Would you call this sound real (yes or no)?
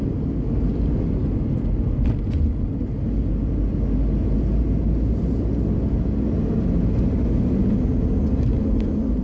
yes